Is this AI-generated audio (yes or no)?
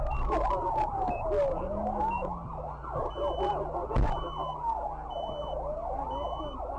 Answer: no